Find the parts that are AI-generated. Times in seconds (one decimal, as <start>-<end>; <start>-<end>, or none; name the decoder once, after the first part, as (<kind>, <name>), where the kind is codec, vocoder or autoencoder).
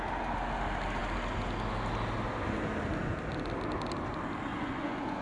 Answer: 4.5-5.2 (vocoder, Vocos)